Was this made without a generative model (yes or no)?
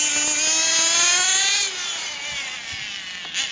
yes